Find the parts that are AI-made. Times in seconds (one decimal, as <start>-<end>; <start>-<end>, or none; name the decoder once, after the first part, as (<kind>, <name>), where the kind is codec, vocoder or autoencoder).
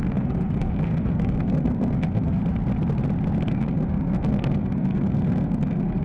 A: 0.0-2.4 (codec, SNAC); 3.5-6.0